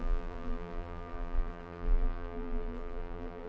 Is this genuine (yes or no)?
no